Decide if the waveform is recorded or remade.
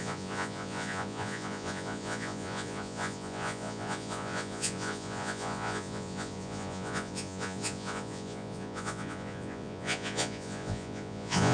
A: remade